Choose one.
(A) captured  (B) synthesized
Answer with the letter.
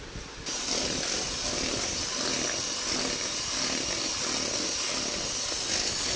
A